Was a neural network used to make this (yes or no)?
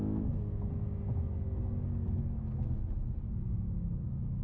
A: no